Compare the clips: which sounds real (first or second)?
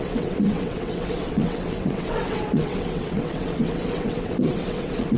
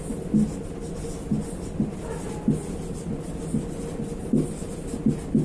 second